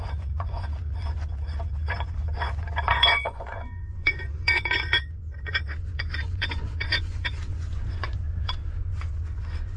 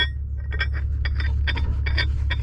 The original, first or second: second